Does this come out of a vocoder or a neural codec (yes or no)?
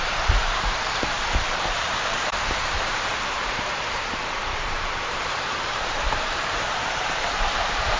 yes